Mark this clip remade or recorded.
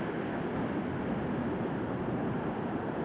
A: recorded